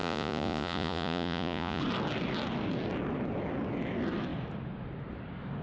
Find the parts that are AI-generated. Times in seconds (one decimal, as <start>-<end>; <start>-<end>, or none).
0.0-1.8